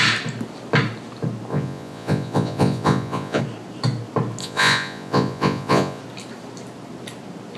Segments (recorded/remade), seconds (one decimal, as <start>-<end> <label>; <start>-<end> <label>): 0.0-1.5 recorded; 1.5-3.4 remade; 3.4-4.4 recorded; 4.4-6.0 remade; 6.0-7.6 recorded